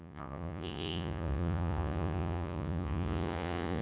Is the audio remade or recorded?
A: remade